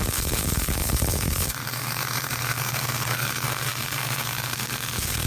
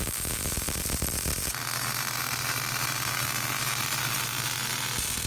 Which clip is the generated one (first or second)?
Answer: first